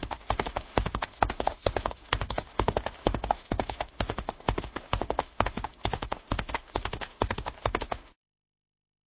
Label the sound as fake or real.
fake